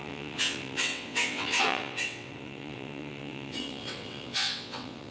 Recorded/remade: remade